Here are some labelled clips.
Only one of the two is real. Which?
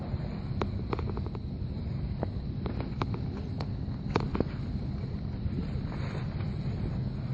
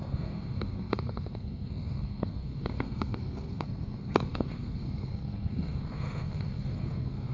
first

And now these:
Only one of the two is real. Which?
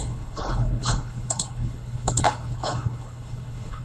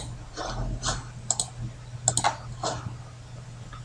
second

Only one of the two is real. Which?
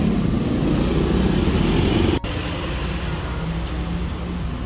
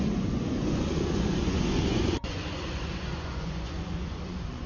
first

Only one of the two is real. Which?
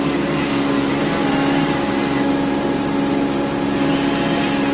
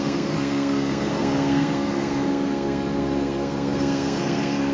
first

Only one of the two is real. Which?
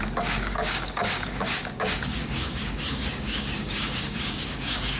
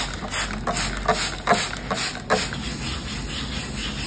second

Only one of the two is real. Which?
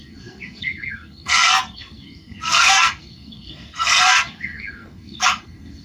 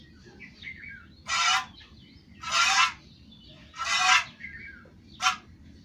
second